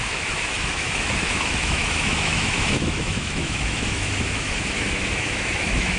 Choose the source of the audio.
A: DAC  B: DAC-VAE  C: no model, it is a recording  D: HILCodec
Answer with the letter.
B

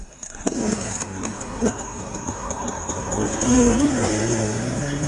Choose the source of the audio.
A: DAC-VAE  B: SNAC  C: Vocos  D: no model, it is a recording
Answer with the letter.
B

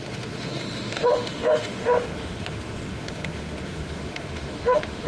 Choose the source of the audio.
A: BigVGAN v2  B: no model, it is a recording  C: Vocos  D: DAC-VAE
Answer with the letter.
D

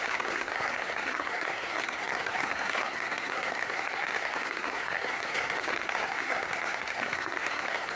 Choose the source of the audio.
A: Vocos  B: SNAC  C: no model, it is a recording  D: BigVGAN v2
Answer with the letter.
B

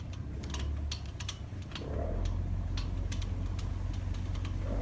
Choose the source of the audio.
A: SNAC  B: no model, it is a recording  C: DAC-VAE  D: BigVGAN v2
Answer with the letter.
B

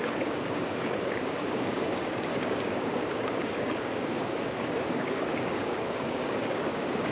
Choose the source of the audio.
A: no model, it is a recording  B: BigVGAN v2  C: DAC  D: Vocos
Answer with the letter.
C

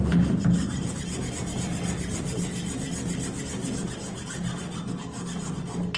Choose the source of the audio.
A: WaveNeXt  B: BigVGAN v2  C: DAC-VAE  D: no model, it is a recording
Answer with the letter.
D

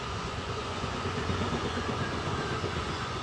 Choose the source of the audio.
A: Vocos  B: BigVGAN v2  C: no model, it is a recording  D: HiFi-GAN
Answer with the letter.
A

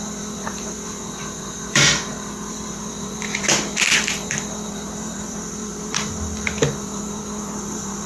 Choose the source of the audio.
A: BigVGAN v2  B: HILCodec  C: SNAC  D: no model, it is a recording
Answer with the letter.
A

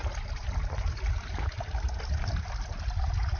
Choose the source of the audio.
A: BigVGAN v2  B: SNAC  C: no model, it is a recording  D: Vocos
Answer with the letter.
C